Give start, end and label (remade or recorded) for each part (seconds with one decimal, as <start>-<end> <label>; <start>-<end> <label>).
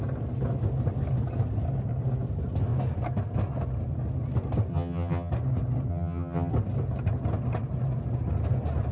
0.0-4.7 recorded; 4.7-5.3 remade; 5.3-5.9 recorded; 5.9-6.5 remade; 6.5-8.9 recorded